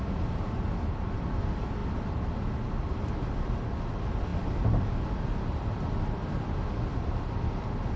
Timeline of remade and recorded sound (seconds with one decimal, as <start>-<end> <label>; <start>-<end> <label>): 0.0-8.0 recorded